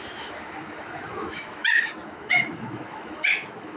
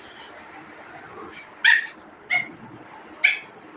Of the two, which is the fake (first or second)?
first